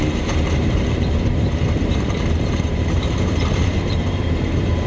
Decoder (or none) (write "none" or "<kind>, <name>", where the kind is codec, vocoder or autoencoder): vocoder, BigVGAN v2